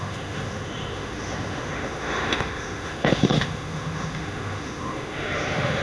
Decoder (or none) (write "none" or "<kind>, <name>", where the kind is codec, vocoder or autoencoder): autoencoder, DAC-VAE